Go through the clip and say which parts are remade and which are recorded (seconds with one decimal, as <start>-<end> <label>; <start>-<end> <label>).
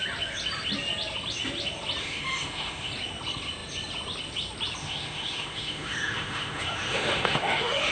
0.0-2.0 recorded; 2.0-2.9 remade; 2.9-4.8 recorded; 4.8-7.9 remade